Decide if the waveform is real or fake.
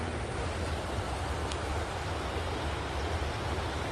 real